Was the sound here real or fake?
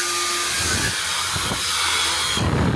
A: real